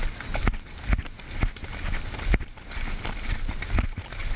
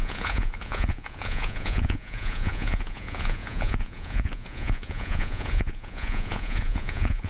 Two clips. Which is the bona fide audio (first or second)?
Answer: first